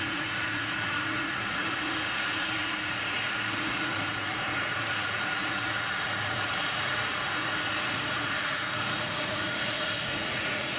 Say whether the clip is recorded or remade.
remade